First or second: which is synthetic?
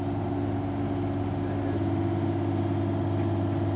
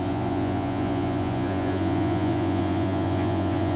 second